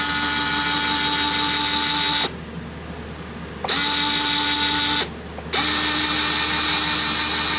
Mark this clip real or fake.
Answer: real